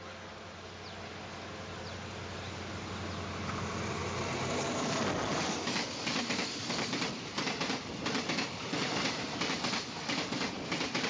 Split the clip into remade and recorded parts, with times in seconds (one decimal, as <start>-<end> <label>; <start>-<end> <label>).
0.0-11.1 recorded